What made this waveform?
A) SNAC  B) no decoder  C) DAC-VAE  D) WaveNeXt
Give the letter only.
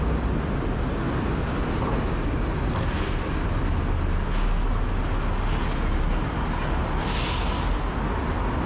B